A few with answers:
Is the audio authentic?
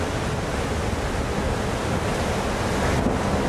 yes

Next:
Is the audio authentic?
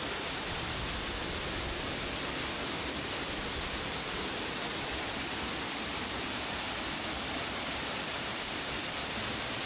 no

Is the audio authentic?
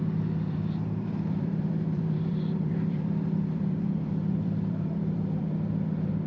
no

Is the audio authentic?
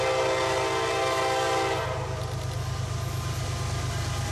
yes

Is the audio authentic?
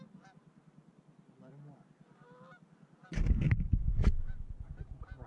yes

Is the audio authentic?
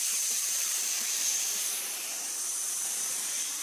no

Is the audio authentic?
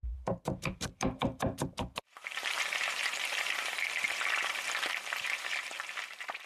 no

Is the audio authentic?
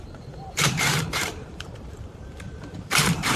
no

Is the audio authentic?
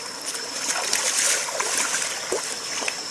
yes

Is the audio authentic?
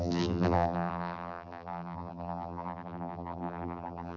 no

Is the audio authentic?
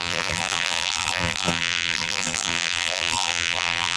no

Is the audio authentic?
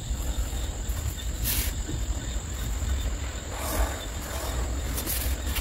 no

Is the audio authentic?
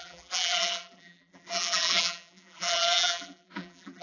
no